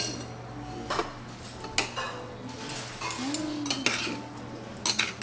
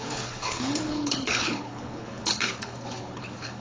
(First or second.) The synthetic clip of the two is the second